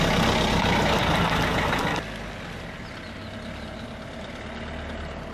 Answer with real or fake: real